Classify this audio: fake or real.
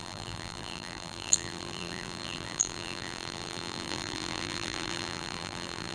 fake